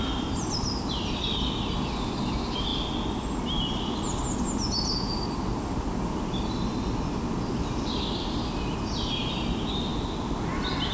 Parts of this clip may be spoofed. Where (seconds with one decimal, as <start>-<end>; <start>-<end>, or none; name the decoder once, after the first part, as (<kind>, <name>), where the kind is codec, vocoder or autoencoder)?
none

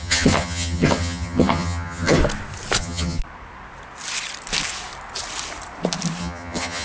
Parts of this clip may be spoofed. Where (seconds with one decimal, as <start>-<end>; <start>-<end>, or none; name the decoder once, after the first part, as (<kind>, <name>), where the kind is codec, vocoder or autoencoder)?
0.0-2.2 (vocoder, HiFi-GAN); 2.8-3.2; 6.2-6.8

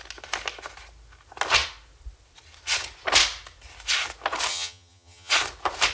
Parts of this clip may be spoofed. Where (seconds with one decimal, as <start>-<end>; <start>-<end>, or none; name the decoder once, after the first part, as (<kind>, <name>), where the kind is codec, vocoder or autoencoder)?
4.5-5.3 (vocoder, HiFi-GAN)